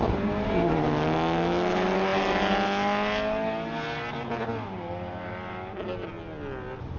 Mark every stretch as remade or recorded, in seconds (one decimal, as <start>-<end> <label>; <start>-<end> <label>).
0.0-7.0 recorded